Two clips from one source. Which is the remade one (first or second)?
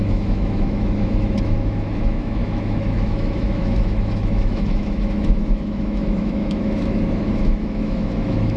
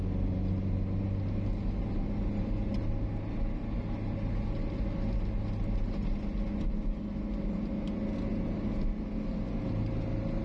first